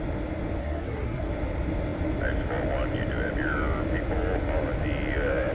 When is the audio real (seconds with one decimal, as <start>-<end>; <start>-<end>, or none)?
0.0-0.6; 1.3-5.5